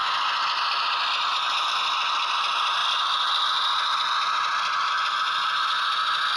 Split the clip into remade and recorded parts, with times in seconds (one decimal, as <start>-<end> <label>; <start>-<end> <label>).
0.0-6.4 recorded